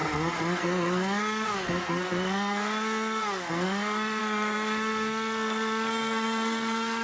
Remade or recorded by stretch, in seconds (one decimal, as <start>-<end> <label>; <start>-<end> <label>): 0.0-7.0 remade